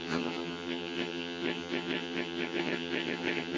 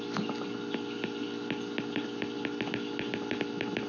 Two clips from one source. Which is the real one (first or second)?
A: second